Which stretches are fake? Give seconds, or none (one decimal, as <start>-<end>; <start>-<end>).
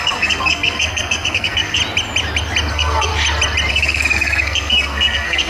0.0-1.8; 2.7-3.1; 3.7-5.5